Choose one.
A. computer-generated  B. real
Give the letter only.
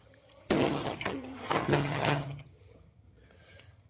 A